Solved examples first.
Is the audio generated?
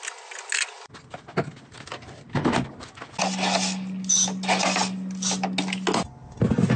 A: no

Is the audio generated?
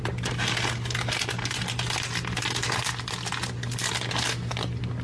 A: yes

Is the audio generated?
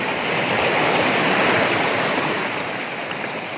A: yes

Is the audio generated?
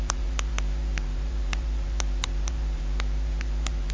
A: yes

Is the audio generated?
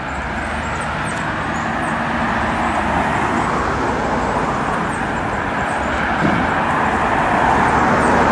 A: no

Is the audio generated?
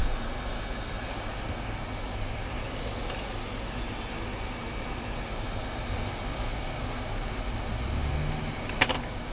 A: no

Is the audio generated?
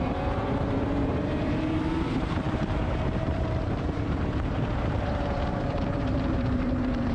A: yes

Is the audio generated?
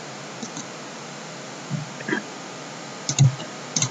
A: yes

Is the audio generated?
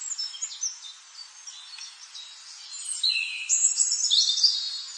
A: no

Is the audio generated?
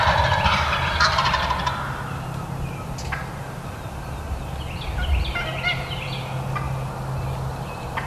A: no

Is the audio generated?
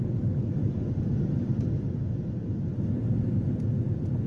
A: no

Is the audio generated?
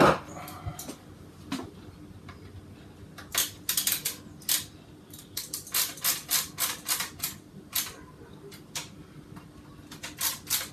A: no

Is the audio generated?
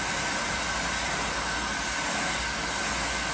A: no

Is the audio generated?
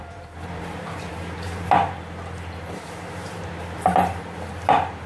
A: yes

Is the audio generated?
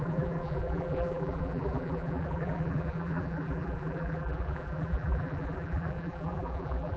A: yes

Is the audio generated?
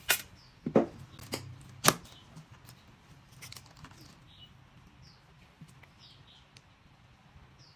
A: no